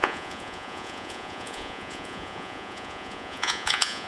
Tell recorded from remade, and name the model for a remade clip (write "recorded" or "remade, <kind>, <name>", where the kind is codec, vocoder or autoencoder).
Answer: remade, vocoder, Vocos